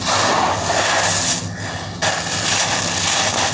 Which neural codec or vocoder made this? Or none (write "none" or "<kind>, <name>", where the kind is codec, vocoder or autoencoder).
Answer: none